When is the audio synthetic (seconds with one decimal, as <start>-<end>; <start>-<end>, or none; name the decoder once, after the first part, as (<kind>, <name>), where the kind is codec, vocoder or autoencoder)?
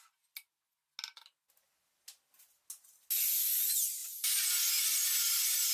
none